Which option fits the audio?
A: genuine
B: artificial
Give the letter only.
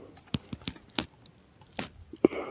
A